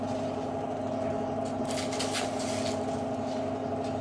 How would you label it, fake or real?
real